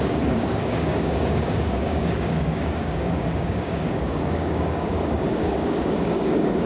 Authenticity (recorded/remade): remade